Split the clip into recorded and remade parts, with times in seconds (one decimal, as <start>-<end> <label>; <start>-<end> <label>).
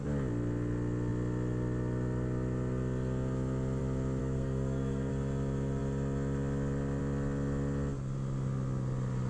0.0-4.2 recorded; 4.2-5.1 remade; 5.1-9.3 recorded